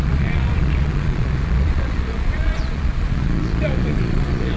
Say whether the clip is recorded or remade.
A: remade